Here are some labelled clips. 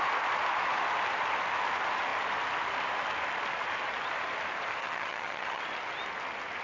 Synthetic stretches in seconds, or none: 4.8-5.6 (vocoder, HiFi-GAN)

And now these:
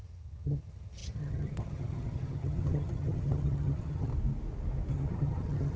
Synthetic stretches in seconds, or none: 0.0-4.1 (vocoder, HiFi-GAN); 4.9-5.8

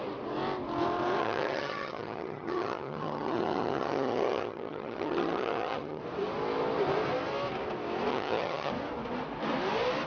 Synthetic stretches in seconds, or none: 1.2-6.0 (vocoder, HiFi-GAN); 8.1-8.7

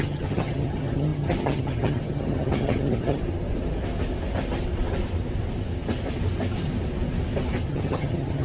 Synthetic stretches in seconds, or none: 0.0-3.2 (vocoder, HiFi-GAN); 7.7-8.4